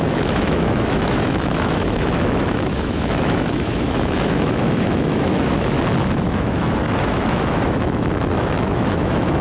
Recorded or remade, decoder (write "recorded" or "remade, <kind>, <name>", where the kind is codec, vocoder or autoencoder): remade, autoencoder, DAC-VAE